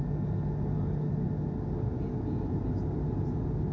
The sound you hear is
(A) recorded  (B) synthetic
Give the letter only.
A